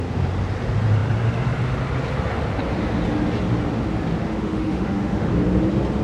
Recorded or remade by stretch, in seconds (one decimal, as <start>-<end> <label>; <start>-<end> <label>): 0.0-4.2 recorded; 4.2-5.3 remade; 5.3-6.0 recorded